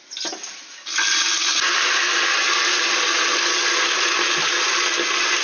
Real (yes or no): yes